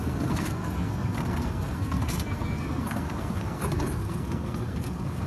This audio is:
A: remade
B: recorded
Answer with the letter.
A